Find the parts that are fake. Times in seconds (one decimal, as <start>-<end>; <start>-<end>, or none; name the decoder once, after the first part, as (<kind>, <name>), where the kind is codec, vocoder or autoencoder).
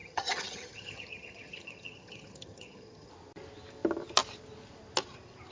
0.0-3.1 (vocoder, HiFi-GAN)